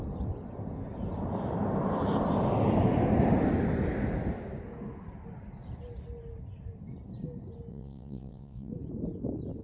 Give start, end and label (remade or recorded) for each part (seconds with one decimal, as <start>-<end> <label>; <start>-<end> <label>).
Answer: 0.0-7.7 recorded; 7.7-8.7 remade; 8.7-9.6 recorded

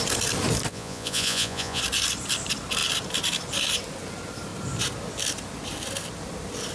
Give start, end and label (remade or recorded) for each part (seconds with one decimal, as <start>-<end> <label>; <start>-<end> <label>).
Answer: 0.0-0.7 recorded; 0.7-1.8 remade; 1.8-6.7 recorded

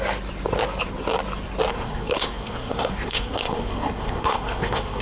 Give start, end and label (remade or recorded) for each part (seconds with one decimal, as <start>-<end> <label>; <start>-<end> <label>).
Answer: 0.0-1.7 recorded; 1.7-5.0 remade

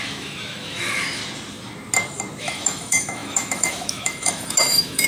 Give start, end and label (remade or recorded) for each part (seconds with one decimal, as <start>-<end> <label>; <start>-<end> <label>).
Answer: 0.0-1.2 remade; 1.2-2.4 recorded; 2.4-5.1 remade